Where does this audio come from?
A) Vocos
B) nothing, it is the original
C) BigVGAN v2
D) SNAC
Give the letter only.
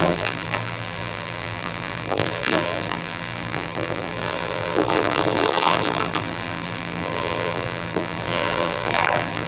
C